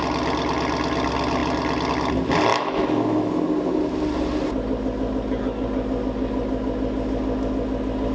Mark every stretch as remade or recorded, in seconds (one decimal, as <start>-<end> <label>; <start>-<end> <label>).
0.0-2.5 recorded; 2.5-3.3 remade; 3.3-8.1 recorded